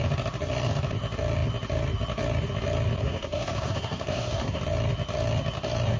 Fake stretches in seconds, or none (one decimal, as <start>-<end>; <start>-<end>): 3.0-4.6